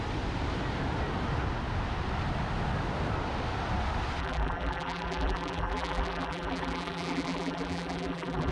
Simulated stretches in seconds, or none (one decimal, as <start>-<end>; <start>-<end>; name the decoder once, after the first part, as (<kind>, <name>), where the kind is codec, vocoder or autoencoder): 4.2-8.5 (vocoder, BigVGAN v2)